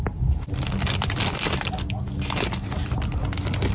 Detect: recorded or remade recorded